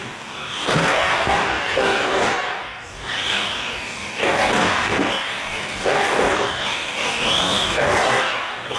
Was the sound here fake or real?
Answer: fake